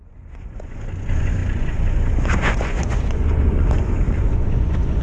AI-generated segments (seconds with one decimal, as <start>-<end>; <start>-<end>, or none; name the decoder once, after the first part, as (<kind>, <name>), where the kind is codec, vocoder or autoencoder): 0.0-5.0 (vocoder, Vocos)